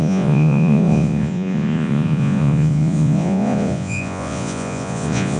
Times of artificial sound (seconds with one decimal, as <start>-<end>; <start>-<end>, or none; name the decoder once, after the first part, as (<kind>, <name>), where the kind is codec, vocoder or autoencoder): 0.0-5.4 (vocoder, Vocos)